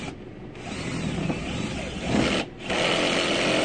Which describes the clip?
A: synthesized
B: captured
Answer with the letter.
B